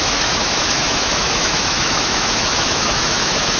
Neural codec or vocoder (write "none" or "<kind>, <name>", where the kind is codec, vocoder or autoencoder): autoencoder, DAC-VAE